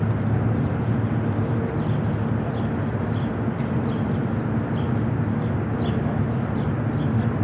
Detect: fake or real real